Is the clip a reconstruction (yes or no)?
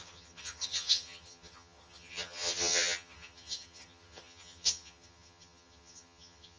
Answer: yes